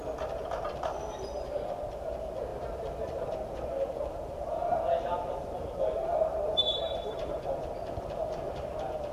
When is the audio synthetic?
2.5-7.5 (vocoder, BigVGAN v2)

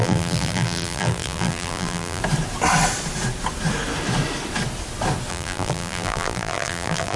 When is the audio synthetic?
0.0-2.2 (vocoder, BigVGAN v2); 5.3-7.2

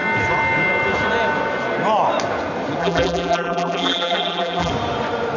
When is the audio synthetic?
2.8-4.7 (vocoder, BigVGAN v2)

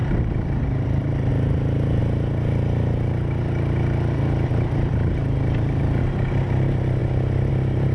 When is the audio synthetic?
0.0-1.3 (vocoder, BigVGAN v2)

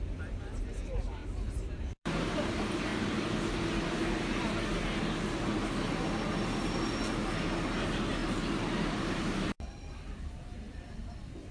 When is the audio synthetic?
1.2-2.5 (vocoder, BigVGAN v2); 8.2-11.1

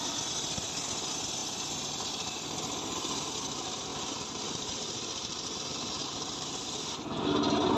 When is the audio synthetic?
3.9-6.9 (vocoder, BigVGAN v2)

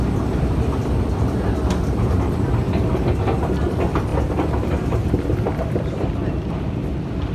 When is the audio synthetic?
4.1-6.3 (vocoder, BigVGAN v2)

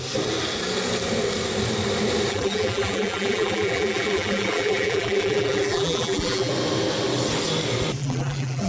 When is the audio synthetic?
2.3-6.5 (vocoder, BigVGAN v2); 8.0-8.7